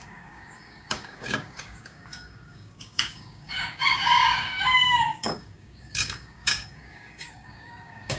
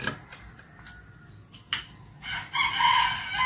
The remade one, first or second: first